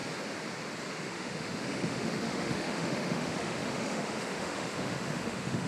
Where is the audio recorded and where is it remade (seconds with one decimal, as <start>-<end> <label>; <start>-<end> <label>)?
0.0-0.9 recorded; 0.9-5.7 remade